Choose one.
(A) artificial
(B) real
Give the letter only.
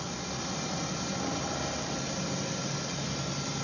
B